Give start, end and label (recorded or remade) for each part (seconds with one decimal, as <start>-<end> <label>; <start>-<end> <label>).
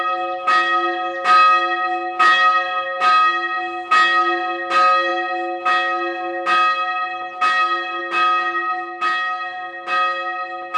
0.0-10.8 recorded